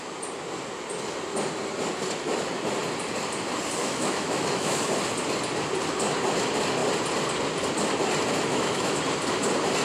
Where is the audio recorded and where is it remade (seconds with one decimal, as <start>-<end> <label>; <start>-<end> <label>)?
0.0-3.8 recorded; 3.8-4.8 remade; 4.8-8.5 recorded; 8.5-9.0 remade; 9.0-9.8 recorded